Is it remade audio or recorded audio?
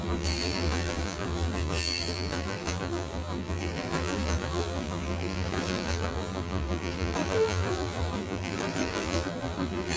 remade